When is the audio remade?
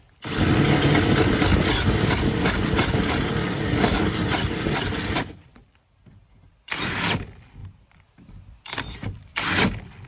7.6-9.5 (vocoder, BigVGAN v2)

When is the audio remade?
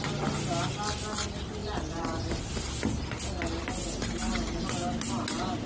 1.6-2.4 (vocoder, BigVGAN v2); 4.0-4.7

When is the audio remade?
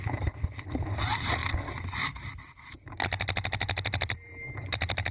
0.0-5.1 (vocoder, BigVGAN v2)